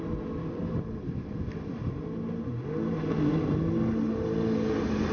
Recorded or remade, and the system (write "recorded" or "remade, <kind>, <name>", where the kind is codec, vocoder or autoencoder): recorded